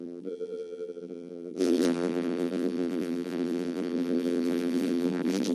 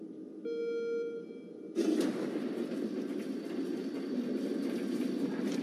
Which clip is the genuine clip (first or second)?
second